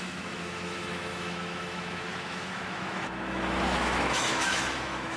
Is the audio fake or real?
fake